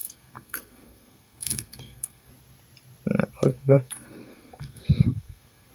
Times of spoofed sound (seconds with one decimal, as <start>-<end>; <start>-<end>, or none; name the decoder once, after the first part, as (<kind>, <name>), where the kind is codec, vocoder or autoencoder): 0.0-2.3 (codec, SNAC); 3.5-5.7